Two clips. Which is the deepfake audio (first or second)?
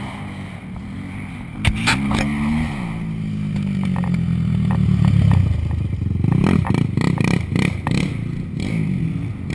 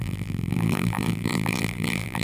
second